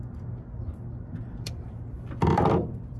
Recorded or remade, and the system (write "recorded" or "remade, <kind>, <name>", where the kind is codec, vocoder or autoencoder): remade, vocoder, BigVGAN v2